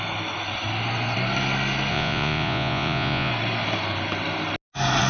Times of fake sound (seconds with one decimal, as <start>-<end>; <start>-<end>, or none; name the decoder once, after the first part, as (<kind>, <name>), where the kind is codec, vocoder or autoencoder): 1.9-3.3 (vocoder, Vocos)